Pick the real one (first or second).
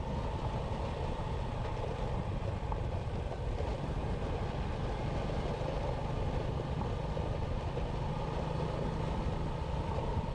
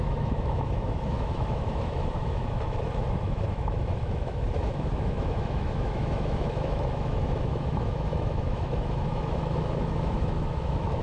first